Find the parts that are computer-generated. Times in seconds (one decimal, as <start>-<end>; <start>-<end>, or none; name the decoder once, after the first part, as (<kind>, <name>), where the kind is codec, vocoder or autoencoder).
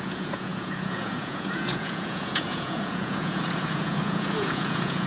0.0-5.1 (vocoder, Vocos)